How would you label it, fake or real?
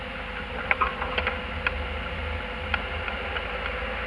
real